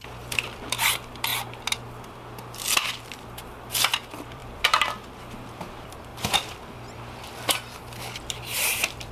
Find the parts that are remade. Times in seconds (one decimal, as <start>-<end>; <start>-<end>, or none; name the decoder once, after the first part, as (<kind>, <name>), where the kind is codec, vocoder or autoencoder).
0.0-1.3 (vocoder, BigVGAN v2); 3.0-9.1

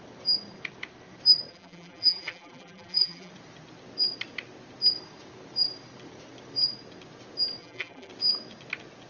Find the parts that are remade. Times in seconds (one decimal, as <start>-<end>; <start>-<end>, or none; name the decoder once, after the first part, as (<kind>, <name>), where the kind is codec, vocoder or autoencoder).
1.5-3.3 (vocoder, BigVGAN v2); 7.6-8.1

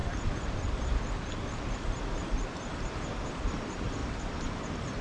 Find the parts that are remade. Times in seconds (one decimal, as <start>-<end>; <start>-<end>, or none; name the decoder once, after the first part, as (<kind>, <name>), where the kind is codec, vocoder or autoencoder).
4.0-5.0 (vocoder, BigVGAN v2)